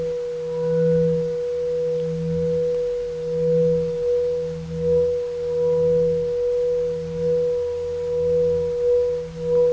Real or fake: real